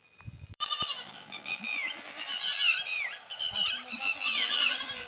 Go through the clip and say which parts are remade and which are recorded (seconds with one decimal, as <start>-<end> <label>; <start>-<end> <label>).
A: 0.0-2.7 remade; 2.7-4.0 recorded; 4.0-5.1 remade